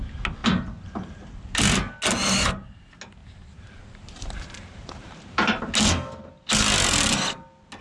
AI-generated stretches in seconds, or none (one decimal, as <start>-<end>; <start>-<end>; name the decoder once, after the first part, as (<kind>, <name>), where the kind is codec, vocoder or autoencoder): 3.2-5.6 (vocoder, BigVGAN v2)